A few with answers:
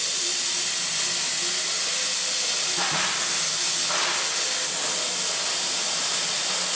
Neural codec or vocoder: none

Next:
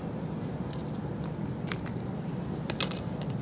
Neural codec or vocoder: none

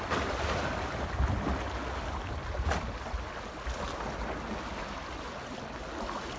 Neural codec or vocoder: none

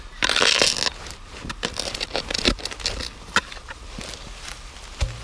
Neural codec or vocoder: none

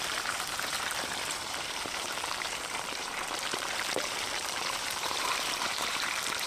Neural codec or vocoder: vocoder, BigVGAN v2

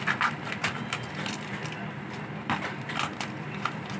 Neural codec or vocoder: vocoder, BigVGAN v2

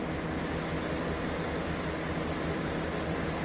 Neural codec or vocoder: none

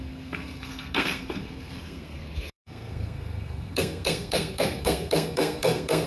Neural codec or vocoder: codec, SNAC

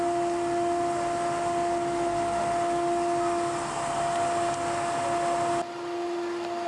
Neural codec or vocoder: none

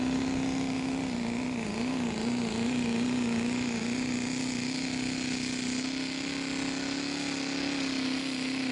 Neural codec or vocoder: none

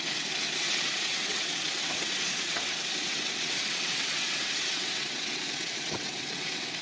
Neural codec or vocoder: vocoder, WaveNeXt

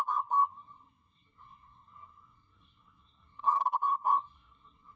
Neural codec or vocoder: codec, SNAC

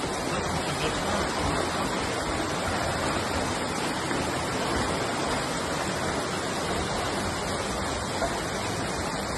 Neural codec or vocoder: none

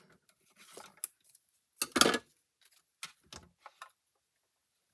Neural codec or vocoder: none